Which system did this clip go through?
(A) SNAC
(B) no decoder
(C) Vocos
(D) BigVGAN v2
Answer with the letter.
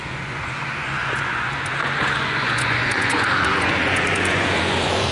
C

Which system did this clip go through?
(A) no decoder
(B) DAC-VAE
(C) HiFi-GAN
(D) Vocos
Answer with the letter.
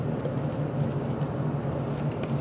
A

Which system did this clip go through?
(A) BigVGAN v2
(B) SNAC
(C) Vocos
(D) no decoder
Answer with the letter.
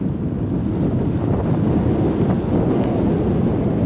D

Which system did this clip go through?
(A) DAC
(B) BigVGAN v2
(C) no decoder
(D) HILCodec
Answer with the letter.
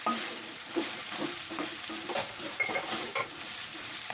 B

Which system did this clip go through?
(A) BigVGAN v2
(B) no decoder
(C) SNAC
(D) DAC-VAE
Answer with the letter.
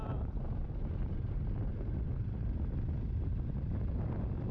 B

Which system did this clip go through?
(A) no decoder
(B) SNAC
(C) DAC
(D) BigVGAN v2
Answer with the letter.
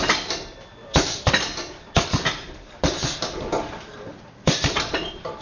D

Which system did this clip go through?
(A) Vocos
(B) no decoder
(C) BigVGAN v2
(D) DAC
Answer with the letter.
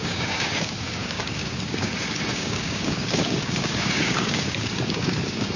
D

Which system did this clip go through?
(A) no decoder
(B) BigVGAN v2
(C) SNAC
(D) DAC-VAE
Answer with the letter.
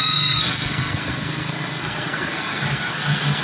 C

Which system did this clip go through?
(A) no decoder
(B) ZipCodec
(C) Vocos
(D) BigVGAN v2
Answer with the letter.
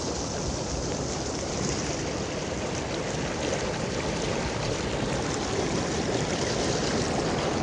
A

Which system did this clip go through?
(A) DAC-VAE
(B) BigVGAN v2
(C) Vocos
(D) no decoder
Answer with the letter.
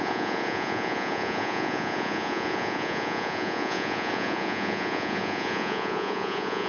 C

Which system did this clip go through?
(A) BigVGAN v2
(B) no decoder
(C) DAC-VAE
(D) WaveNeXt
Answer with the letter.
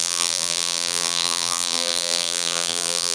A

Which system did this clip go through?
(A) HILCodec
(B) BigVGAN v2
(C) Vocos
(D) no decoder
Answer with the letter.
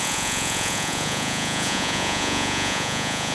C